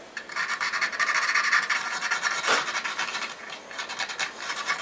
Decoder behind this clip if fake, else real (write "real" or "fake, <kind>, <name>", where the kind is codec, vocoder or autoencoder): real